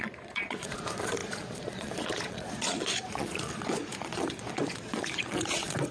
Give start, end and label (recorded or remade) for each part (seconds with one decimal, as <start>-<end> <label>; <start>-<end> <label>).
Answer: 0.0-5.9 remade